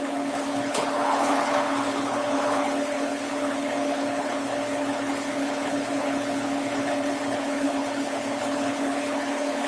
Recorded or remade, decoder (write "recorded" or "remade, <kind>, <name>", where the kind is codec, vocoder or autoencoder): remade, codec, HILCodec